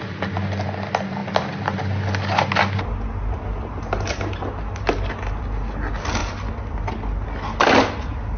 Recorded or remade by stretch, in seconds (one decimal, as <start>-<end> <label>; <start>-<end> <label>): 0.0-8.4 recorded